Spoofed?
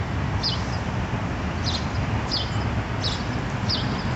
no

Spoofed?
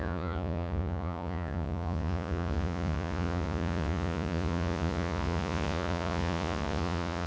yes